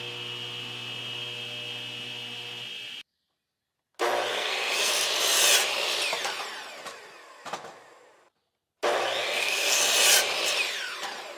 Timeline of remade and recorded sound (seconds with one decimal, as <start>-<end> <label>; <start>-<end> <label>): 0.0-4.3 recorded; 4.3-4.9 remade; 4.9-9.3 recorded; 9.3-9.8 remade; 9.8-11.4 recorded